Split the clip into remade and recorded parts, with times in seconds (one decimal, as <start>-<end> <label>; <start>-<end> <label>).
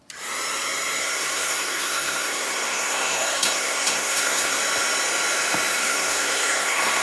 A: 0.0-1.0 recorded; 1.0-4.6 remade; 4.6-5.8 recorded; 5.8-7.0 remade